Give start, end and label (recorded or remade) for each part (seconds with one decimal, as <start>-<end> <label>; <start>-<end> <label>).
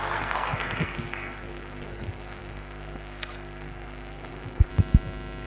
0.0-4.7 remade; 4.7-5.5 recorded